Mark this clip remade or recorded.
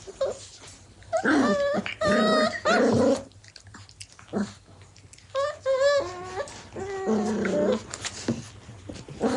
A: recorded